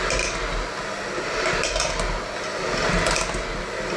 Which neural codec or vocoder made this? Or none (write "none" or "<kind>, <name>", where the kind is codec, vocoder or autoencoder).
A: none